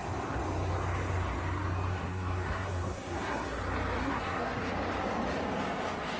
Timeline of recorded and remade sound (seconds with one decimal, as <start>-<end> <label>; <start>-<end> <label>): 0.0-1.9 recorded; 1.9-3.6 remade; 3.6-4.0 recorded; 4.0-4.6 remade; 4.6-6.2 recorded